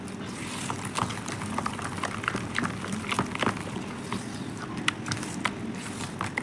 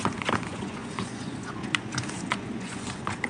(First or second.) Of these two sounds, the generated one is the second